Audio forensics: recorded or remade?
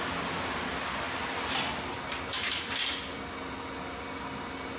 recorded